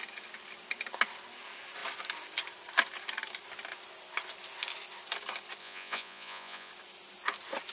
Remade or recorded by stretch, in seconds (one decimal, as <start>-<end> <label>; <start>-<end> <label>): 0.0-5.6 recorded; 5.6-6.7 remade; 6.7-7.7 recorded